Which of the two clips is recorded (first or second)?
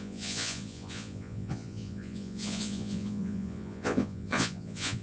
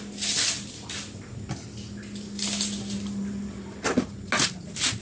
second